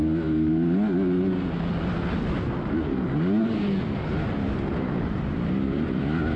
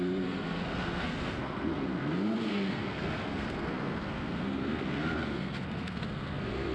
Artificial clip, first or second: second